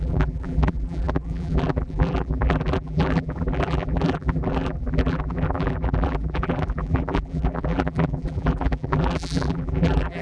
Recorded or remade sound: remade